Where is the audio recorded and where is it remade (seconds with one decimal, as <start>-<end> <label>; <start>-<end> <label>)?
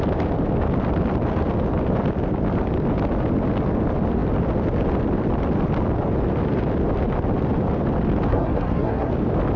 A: 0.0-8.3 recorded; 8.3-9.1 remade; 9.1-9.6 recorded